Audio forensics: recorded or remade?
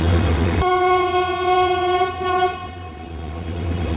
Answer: remade